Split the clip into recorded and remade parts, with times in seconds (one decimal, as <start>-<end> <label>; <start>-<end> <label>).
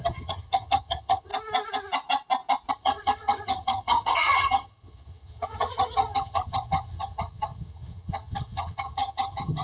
0.0-1.3 remade; 1.3-2.7 recorded; 2.7-9.6 remade